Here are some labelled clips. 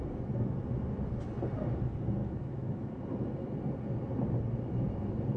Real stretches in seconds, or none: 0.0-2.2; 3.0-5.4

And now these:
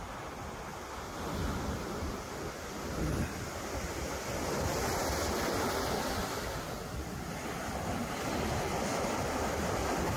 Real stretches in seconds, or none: 0.0-10.2

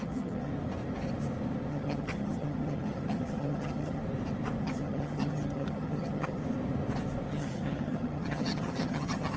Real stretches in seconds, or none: 0.5-1.7; 4.0-4.6; 6.4-7.3

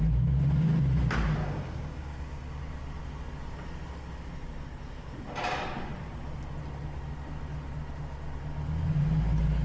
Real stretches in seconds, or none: 0.0-1.4; 2.6-9.6

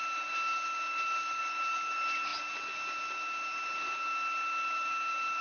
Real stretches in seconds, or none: 0.0-5.4

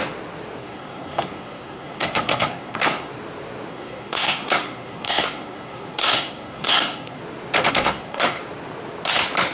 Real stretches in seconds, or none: 0.0-0.6; 3.1-3.7; 7.2-7.7; 8.4-9.5

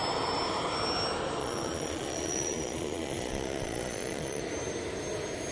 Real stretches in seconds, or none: 0.0-1.4; 4.4-5.5